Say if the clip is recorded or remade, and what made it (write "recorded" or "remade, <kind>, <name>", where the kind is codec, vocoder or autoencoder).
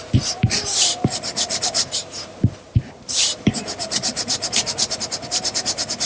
remade, vocoder, BigVGAN v2